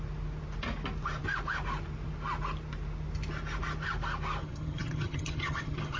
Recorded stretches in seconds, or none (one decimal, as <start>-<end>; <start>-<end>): 0.0-4.4